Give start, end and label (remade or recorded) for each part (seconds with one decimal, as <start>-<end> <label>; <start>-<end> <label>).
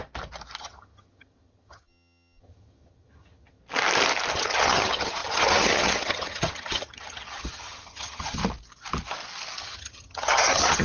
0.0-0.6 recorded; 0.6-3.6 remade; 3.6-4.3 recorded; 4.3-8.4 remade; 8.4-9.6 recorded; 9.6-10.8 remade